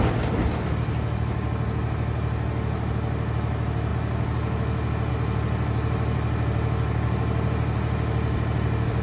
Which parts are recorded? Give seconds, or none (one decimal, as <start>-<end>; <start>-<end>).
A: 0.0-9.0